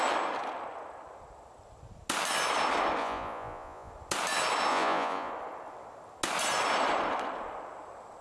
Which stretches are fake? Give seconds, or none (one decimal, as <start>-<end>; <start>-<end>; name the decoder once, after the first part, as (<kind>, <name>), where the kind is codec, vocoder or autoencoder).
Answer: 3.0-3.9 (vocoder, Vocos); 4.7-5.3